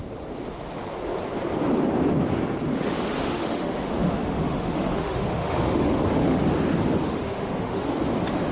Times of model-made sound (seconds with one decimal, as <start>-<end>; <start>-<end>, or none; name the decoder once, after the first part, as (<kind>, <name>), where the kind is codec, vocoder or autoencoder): 2.7-6.4 (autoencoder, DAC-VAE); 7.0-7.9